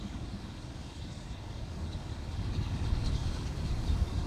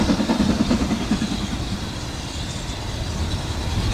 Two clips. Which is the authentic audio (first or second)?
second